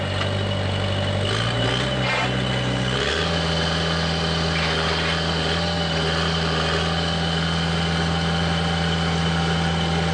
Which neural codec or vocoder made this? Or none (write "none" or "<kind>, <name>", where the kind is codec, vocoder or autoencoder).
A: none